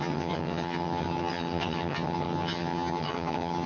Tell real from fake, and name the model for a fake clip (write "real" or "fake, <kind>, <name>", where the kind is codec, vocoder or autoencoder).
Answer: fake, vocoder, HiFi-GAN